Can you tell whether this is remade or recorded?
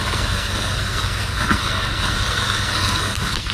remade